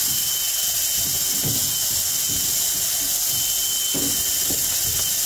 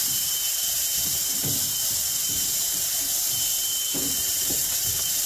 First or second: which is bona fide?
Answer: first